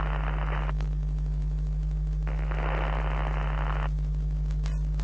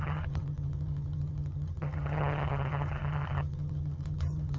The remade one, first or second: second